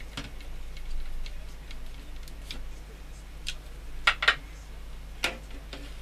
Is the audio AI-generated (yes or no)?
no